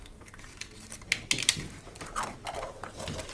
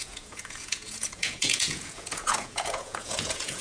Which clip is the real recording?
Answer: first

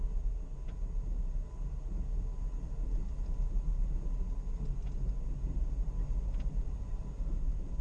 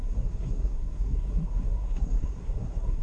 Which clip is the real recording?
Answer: first